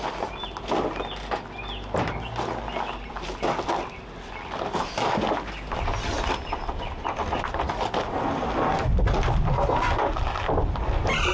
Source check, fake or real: real